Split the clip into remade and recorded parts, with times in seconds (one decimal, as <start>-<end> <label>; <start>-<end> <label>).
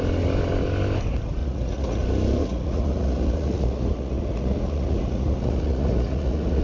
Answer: 0.0-1.4 recorded; 1.4-2.0 remade; 2.0-2.4 recorded; 2.4-6.6 remade